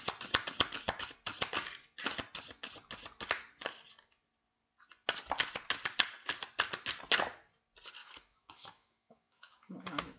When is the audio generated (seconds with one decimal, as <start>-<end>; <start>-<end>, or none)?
8.0-10.2